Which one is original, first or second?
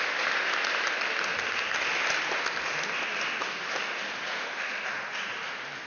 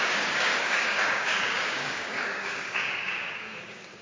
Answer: first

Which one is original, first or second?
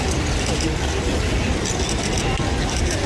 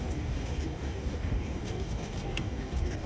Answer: first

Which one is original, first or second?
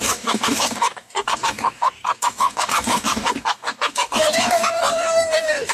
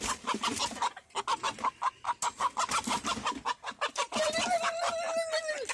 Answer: second